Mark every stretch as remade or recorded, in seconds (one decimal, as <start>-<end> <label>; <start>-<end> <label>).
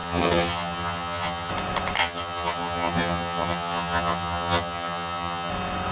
0.0-1.5 remade; 1.5-2.0 recorded; 2.0-5.5 remade; 5.5-5.9 recorded